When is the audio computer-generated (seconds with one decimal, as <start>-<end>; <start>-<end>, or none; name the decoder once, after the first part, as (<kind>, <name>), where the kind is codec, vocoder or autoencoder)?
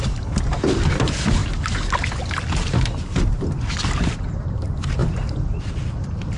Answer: none